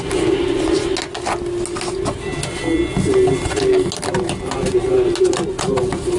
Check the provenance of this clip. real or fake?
real